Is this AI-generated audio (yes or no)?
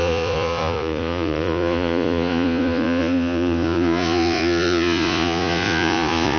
yes